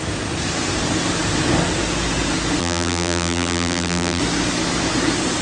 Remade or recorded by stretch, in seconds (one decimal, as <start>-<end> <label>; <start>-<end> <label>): 0.0-2.6 recorded; 2.6-4.2 remade; 4.2-5.4 recorded